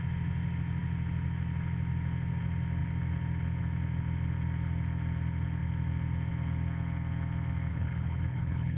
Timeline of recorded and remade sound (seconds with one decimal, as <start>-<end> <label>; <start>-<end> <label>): 0.0-7.7 recorded; 7.7-8.8 remade